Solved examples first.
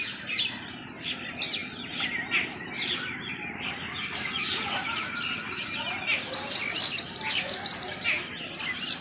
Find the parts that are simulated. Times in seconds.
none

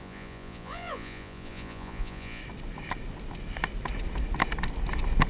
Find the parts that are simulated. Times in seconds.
0.0-2.4 (vocoder, Vocos)